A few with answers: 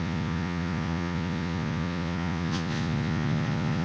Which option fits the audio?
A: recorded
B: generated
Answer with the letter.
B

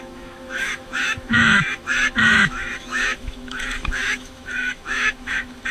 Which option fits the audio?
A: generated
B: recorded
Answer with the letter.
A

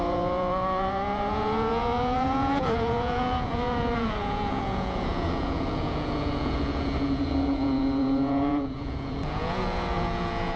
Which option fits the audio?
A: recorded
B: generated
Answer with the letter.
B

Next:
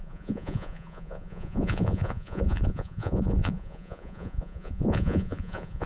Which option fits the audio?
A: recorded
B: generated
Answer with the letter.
B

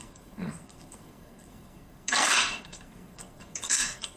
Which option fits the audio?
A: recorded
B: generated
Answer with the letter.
B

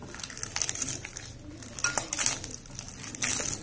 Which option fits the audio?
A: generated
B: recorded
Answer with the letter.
B